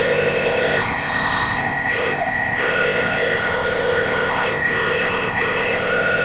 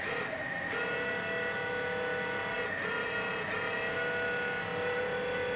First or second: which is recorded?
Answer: second